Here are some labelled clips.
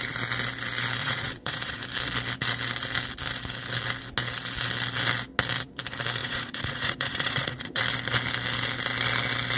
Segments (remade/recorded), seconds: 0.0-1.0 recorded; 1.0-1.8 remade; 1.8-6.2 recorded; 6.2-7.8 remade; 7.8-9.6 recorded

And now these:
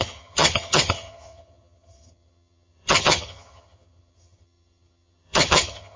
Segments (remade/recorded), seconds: 0.0-6.0 remade

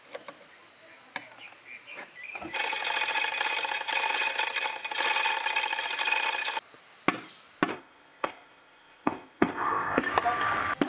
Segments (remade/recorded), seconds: 0.0-7.7 recorded; 7.7-10.0 remade; 10.0-10.9 recorded

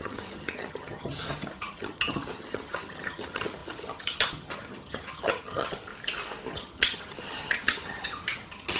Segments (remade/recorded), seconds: 0.0-5.9 remade; 5.9-6.5 recorded; 6.5-8.8 remade

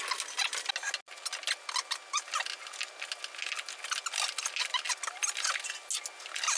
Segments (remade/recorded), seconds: 0.0-6.6 recorded

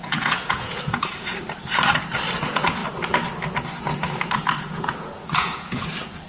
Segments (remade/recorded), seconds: 0.0-1.3 remade; 1.3-2.4 recorded; 2.4-2.8 remade; 2.8-4.6 recorded; 4.6-6.3 remade

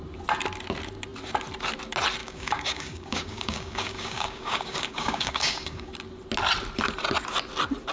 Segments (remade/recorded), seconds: 0.0-2.2 recorded; 2.2-5.9 remade; 5.9-7.9 recorded